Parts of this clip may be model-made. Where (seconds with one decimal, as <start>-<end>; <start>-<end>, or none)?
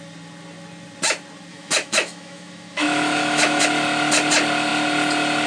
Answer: 1.5-3.6